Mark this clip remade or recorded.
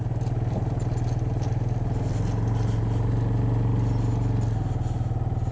recorded